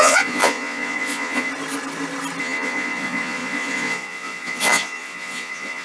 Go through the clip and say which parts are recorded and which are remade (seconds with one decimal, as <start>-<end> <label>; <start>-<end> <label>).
0.0-1.5 remade; 1.5-2.4 recorded; 2.4-5.8 remade

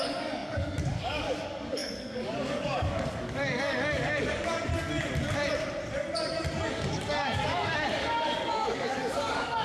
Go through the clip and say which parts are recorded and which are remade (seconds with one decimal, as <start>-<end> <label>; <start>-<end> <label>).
0.0-4.7 remade; 4.7-6.7 recorded; 6.7-9.6 remade

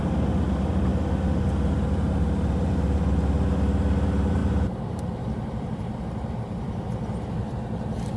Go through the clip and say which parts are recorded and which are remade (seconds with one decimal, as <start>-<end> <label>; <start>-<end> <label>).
0.0-8.2 recorded

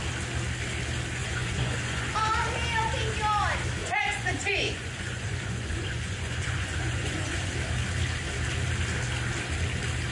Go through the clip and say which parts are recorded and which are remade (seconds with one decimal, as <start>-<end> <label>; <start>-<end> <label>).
0.0-1.2 recorded; 1.2-2.1 remade; 2.1-3.8 recorded; 3.8-7.5 remade; 7.5-10.1 recorded

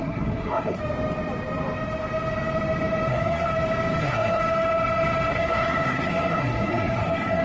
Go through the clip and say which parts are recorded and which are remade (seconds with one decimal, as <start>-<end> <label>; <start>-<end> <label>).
0.0-0.8 remade; 0.8-3.1 recorded; 3.1-3.5 remade; 3.5-4.0 recorded; 4.0-4.4 remade; 4.4-5.3 recorded; 5.3-7.4 remade